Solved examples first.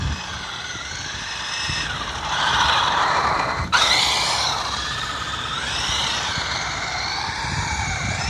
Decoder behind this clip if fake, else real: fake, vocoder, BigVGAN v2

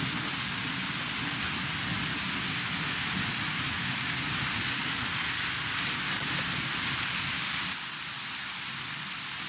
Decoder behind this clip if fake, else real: real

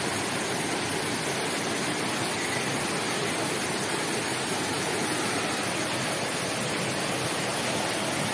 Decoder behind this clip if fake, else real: real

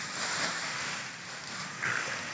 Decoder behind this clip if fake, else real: real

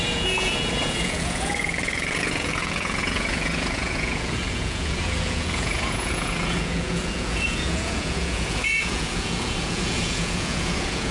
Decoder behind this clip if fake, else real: fake, vocoder, Vocos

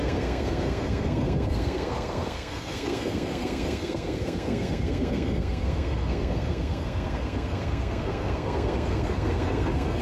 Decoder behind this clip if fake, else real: fake, codec, SNAC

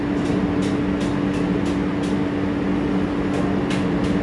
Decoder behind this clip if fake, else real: real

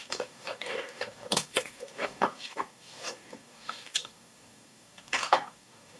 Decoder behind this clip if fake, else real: fake, codec, DAC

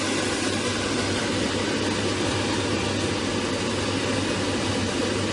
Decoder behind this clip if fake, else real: real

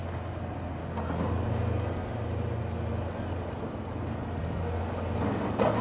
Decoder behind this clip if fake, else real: real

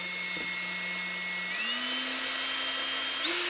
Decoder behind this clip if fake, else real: real